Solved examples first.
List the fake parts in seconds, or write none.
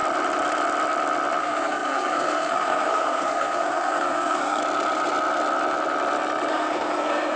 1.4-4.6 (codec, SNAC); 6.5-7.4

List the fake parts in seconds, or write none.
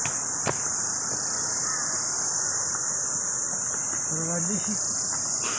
none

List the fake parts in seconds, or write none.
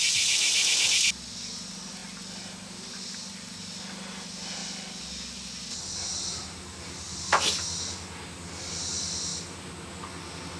4.6-5.8 (vocoder, BigVGAN v2)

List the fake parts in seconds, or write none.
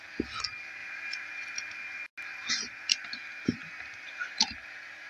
none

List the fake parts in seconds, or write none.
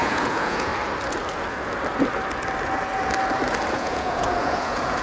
0.0-0.7 (vocoder, Vocos); 3.7-5.0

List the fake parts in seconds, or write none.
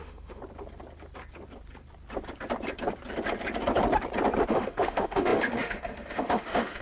0.0-0.4 (autoencoder, DAC-VAE); 4.5-6.8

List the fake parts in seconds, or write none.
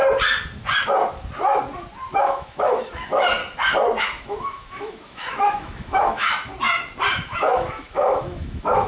2.2-3.4 (autoencoder, DAC-VAE); 4.0-6.5; 7.1-8.9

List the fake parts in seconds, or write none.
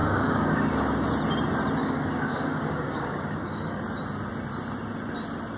0.0-0.7 (codec, DAC); 1.8-3.8